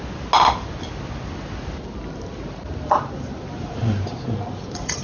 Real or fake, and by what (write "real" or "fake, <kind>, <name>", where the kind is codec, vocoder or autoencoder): real